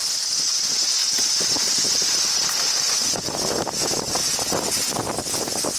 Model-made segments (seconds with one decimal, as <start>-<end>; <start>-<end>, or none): none